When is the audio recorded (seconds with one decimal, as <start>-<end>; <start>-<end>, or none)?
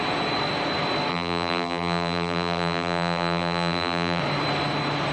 0.0-1.1; 4.2-5.1